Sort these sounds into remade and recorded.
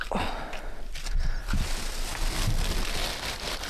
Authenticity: recorded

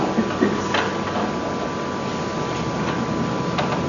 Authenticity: recorded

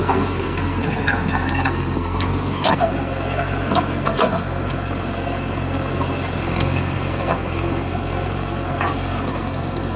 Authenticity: remade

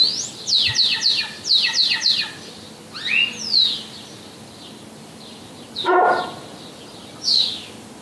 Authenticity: recorded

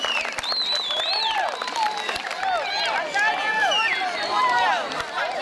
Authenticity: recorded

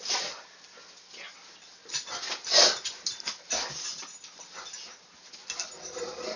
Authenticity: recorded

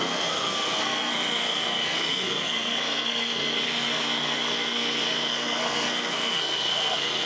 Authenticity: remade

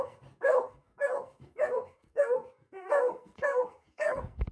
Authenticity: remade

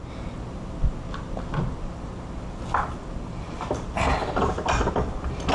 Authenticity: recorded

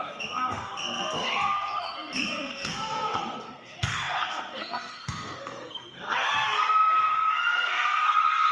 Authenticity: remade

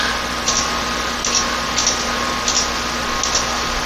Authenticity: recorded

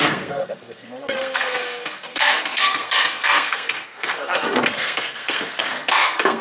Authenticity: remade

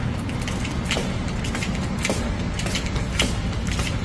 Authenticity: recorded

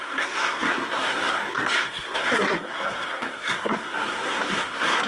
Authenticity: remade